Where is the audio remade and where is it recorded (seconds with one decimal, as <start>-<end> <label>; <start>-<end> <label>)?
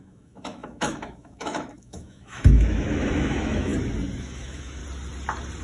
0.0-3.7 remade; 3.7-4.2 recorded; 4.2-4.8 remade; 4.8-5.6 recorded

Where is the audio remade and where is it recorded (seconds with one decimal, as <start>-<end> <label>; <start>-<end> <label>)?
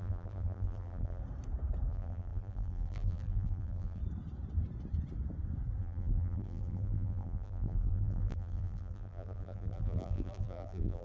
0.0-1.2 remade; 1.2-1.9 recorded; 1.9-4.0 remade; 4.0-5.8 recorded; 5.8-11.0 remade